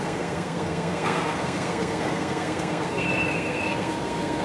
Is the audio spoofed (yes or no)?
yes